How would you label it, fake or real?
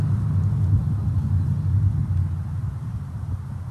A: real